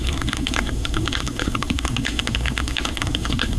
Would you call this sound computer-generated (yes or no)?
yes